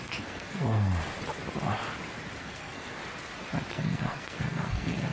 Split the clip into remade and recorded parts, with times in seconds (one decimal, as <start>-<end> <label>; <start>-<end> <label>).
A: 0.0-0.9 remade; 0.9-2.4 recorded; 2.4-3.0 remade; 3.0-3.7 recorded; 3.7-5.1 remade